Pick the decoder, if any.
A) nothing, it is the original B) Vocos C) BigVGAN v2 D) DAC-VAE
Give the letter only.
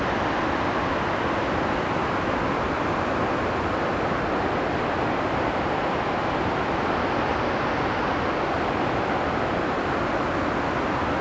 A